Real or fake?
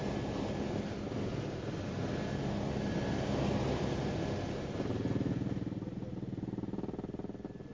real